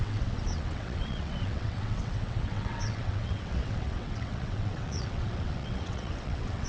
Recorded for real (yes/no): no